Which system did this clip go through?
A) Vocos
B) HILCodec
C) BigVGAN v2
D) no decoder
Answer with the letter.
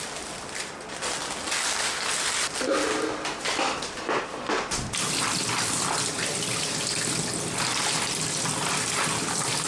D